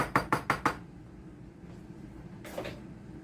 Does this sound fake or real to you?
real